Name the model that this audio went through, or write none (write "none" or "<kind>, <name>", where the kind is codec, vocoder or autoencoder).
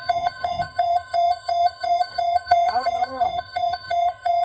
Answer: vocoder, HiFi-GAN